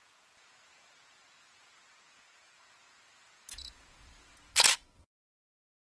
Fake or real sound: fake